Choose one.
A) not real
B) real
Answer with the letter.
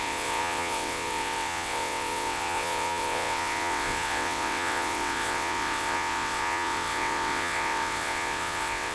A